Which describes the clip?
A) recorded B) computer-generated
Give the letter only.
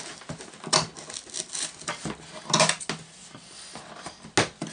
A